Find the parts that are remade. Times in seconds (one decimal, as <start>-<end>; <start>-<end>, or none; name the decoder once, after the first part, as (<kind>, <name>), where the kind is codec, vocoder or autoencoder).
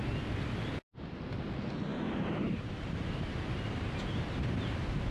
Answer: 1.9-5.1 (vocoder, BigVGAN v2)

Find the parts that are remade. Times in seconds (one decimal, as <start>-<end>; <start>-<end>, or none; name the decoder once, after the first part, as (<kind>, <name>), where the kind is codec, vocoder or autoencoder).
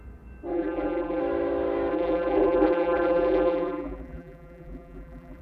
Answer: 0.5-1.2 (vocoder, BigVGAN v2); 1.9-5.4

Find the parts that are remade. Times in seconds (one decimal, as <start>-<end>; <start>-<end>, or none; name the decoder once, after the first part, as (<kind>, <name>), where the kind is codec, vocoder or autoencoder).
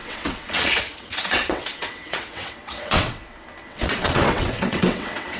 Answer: 0.0-3.2 (vocoder, WaveNeXt); 3.6-5.4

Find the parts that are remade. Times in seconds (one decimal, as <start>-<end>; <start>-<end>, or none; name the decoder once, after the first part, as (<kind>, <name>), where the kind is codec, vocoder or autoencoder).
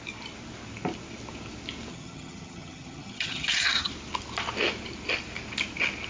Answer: 1.9-3.9 (vocoder, HiFi-GAN)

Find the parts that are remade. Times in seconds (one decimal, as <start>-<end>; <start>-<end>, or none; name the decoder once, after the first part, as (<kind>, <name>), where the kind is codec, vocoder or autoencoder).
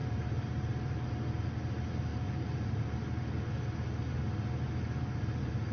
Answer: 0.0-1.1 (vocoder, BigVGAN v2); 2.1-3.0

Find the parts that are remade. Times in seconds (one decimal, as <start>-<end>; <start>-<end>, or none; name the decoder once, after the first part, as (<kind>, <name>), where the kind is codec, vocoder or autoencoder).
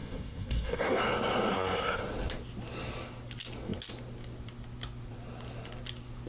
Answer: 0.0-1.0 (codec, SNAC); 1.5-2.0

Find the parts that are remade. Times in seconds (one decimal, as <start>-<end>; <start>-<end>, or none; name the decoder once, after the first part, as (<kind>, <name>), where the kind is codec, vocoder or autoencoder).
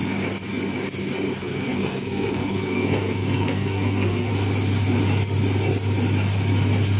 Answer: 1.4-4.3 (codec, SNAC)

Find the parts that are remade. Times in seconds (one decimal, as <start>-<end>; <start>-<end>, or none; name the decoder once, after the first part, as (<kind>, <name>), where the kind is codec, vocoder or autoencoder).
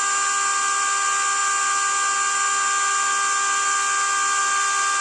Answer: none